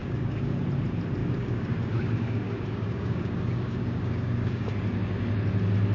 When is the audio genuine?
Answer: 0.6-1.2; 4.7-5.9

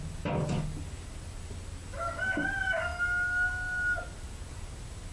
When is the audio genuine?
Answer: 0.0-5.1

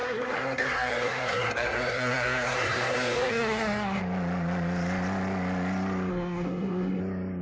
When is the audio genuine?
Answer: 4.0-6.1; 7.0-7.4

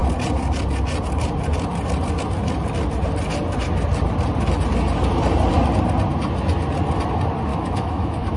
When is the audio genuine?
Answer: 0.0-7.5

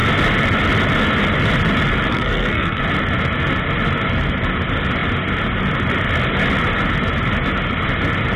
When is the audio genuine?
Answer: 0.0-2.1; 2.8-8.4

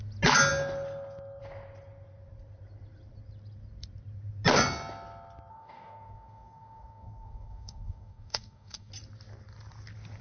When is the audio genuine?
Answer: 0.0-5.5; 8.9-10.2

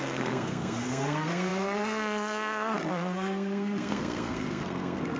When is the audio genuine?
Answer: none

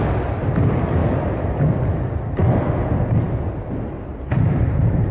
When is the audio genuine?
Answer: 0.0-1.0; 1.8-4.1